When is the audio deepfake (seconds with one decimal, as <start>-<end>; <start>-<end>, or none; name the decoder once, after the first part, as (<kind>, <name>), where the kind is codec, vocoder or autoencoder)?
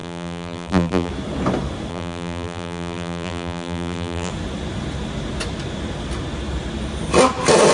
0.0-1.1 (vocoder, BigVGAN v2); 1.9-4.3